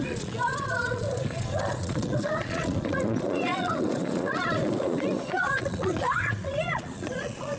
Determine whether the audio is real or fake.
fake